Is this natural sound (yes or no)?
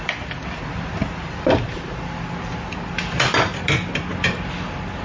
yes